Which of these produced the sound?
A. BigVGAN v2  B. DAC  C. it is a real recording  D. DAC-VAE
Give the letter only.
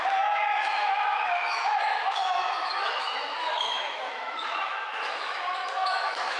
D